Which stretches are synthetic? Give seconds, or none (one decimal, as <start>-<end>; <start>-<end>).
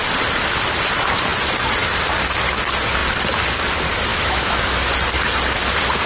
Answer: 4.1-4.9